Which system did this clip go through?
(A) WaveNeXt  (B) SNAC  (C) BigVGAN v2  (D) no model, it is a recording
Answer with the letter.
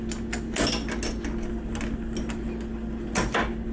D